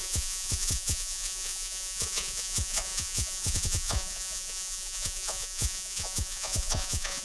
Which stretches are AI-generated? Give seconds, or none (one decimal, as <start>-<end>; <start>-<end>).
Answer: 0.0-7.2